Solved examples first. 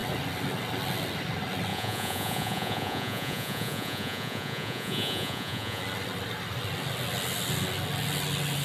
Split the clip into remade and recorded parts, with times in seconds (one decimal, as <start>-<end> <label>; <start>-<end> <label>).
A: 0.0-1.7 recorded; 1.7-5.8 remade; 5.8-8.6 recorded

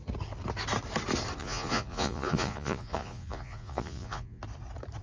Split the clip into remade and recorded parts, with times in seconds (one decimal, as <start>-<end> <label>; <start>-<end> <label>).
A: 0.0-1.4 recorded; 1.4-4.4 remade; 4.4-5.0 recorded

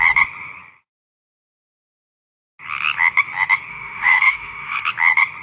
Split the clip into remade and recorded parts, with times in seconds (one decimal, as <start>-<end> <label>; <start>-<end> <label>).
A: 0.0-3.7 recorded; 3.7-4.9 remade; 4.9-5.4 recorded

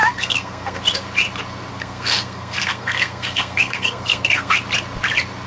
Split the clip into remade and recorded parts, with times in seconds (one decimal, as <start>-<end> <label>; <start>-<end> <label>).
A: 0.0-0.8 remade; 0.8-1.7 recorded; 1.7-4.6 remade; 4.6-5.5 recorded

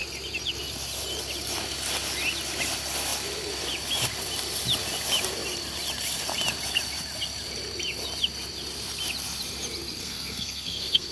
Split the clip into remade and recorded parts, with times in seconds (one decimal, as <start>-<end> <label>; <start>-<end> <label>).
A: 0.0-10.0 recorded; 10.0-11.1 remade

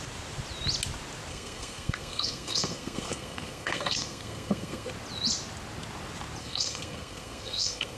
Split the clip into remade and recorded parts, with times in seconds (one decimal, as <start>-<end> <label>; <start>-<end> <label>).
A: 0.0-1.3 recorded; 1.3-4.9 remade; 4.9-6.4 recorded; 6.4-8.0 remade